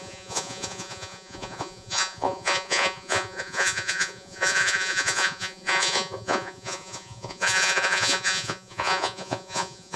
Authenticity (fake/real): fake